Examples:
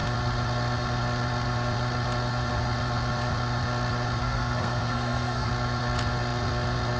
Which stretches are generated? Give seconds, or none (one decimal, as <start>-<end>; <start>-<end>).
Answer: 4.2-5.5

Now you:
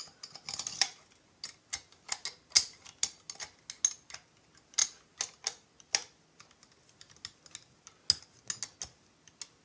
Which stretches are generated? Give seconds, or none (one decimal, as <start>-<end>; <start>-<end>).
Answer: none

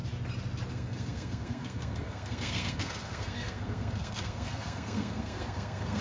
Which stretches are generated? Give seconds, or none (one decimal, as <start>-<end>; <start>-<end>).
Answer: 0.7-6.0

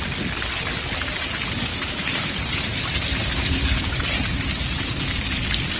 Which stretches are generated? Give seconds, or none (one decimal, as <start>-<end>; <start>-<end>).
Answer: 1.7-4.4

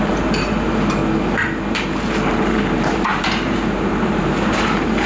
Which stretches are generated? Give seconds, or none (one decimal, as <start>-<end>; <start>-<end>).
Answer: 0.0-1.0; 2.3-5.1